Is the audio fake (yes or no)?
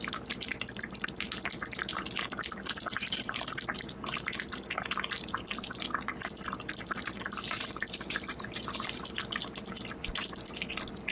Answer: no